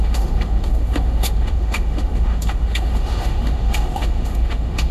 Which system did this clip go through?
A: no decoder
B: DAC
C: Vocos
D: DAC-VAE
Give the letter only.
D